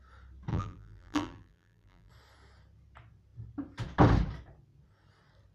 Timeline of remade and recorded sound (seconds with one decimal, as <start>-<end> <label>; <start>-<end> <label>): 0.0-0.5 recorded; 0.5-2.1 remade; 2.1-5.5 recorded